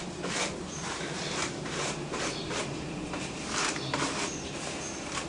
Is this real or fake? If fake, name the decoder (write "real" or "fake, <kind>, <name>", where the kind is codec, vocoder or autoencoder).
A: fake, vocoder, BigVGAN v2